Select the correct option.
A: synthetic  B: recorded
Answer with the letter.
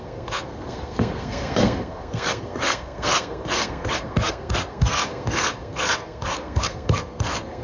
A